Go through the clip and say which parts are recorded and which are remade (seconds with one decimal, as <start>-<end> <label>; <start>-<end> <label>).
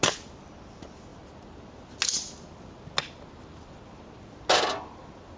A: 0.0-5.4 recorded